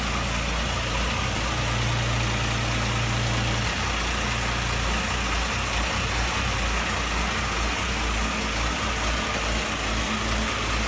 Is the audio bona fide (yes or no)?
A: yes